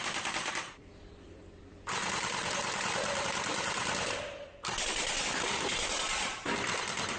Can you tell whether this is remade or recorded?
remade